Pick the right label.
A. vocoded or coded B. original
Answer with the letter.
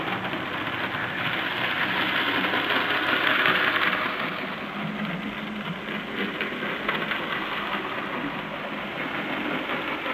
B